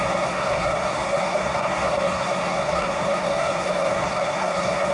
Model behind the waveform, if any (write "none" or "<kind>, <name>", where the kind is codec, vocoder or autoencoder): codec, SNAC